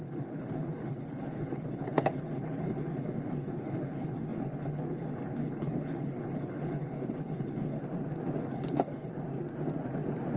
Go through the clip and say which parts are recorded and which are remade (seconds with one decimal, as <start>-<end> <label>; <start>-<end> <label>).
0.0-7.8 remade; 7.8-8.4 recorded; 8.4-9.1 remade; 9.1-10.4 recorded